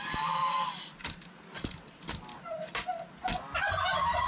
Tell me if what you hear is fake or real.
real